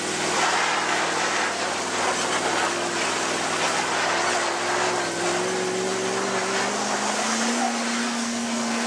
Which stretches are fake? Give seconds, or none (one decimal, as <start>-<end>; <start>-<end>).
8.0-8.9